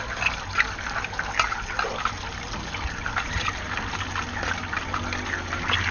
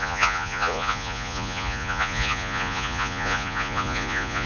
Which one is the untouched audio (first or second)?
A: first